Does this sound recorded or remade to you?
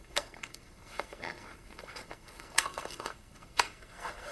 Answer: remade